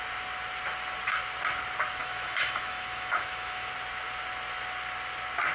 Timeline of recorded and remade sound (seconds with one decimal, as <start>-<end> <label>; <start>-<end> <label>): 0.0-2.0 recorded; 2.0-3.7 remade; 3.7-5.5 recorded

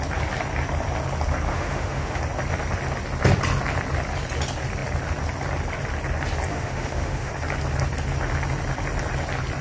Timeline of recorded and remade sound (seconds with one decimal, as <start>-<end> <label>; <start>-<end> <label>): 0.0-1.5 recorded; 1.5-2.2 remade; 2.2-6.5 recorded; 6.5-7.3 remade; 7.3-9.6 recorded

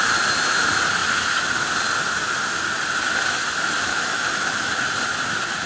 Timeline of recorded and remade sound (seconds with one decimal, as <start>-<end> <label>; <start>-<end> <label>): 0.0-3.9 recorded; 3.9-4.7 remade; 4.7-5.7 recorded

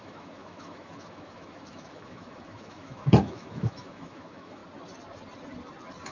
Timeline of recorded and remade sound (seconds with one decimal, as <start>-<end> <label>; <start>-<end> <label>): 0.0-4.6 remade; 4.6-6.1 recorded

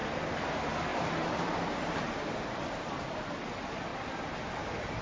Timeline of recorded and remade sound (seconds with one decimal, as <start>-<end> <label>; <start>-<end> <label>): 0.0-5.0 recorded

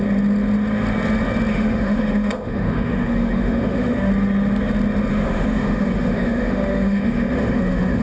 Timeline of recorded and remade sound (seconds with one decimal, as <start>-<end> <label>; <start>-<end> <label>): 0.0-1.5 recorded; 1.5-4.1 remade; 4.1-5.1 recorded; 5.1-8.0 remade

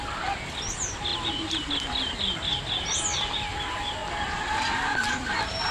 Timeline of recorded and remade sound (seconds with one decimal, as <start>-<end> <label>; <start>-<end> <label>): 0.0-5.7 recorded